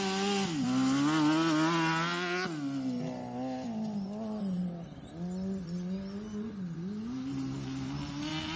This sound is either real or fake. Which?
real